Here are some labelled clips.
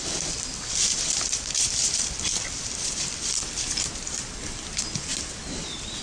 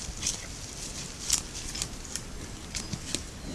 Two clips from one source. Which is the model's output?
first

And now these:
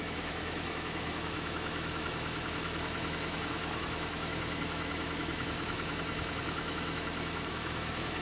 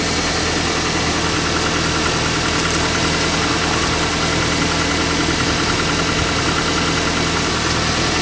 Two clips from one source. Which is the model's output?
first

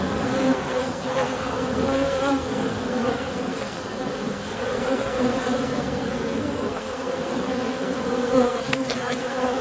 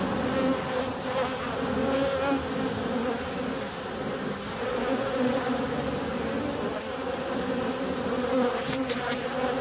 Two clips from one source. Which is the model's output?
first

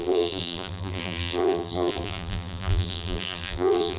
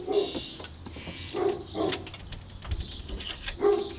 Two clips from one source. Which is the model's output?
first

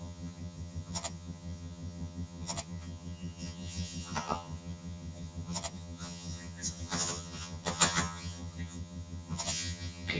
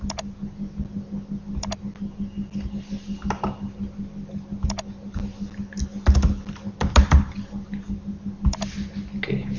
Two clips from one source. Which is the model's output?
first